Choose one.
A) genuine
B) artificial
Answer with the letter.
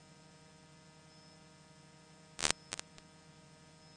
A